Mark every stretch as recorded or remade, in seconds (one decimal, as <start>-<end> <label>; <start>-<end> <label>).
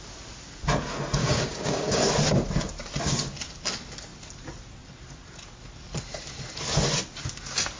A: 0.0-1.2 recorded; 1.2-2.0 remade; 2.0-7.8 recorded